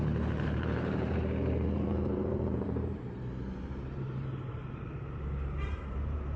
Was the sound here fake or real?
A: fake